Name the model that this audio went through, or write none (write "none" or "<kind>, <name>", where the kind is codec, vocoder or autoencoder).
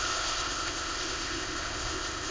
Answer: codec, ZipCodec